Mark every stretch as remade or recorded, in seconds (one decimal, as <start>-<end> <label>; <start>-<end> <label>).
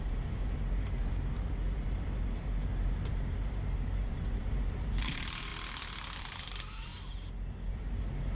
0.0-5.5 remade; 5.5-6.2 recorded; 6.2-6.9 remade; 6.9-7.7 recorded; 7.7-8.3 remade